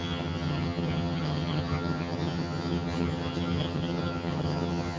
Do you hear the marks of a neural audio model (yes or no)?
yes